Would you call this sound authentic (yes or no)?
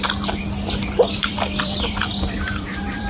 no